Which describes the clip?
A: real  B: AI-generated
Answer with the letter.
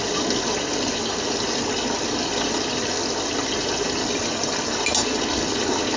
A